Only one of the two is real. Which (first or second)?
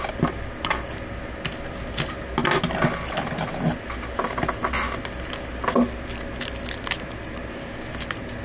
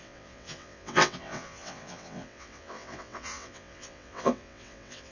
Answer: first